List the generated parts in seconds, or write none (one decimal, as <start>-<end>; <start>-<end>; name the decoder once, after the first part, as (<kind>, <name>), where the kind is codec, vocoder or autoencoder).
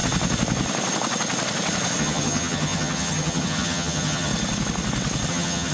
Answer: 2.0-4.3 (vocoder, HiFi-GAN); 5.3-5.7